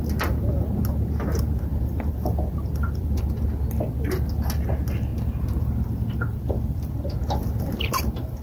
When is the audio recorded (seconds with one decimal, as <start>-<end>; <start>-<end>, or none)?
0.0-1.7; 3.2-6.3; 6.9-8.4